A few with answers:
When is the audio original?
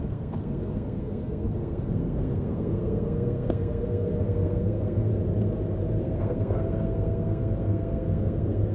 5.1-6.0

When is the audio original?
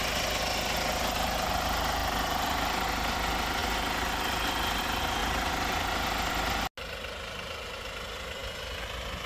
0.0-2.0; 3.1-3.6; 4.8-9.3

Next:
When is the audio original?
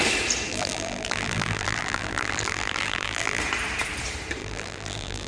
0.0-0.5; 3.4-4.4